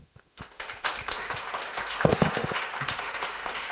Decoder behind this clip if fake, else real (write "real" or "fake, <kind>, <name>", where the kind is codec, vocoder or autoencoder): fake, autoencoder, DAC-VAE